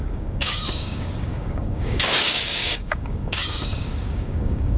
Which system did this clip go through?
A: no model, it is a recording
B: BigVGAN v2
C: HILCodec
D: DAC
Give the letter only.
D